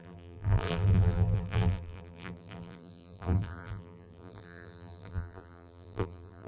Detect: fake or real fake